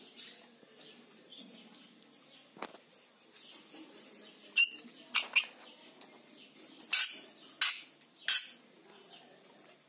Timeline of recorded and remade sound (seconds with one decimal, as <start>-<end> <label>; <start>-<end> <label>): 0.0-9.9 recorded